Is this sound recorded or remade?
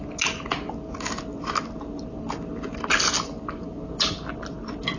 recorded